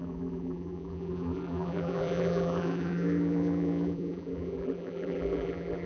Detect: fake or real fake